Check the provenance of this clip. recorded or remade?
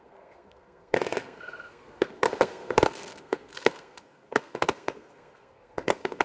remade